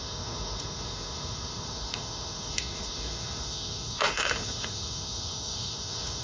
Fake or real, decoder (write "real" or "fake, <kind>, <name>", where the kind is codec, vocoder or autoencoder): fake, autoencoder, DAC-VAE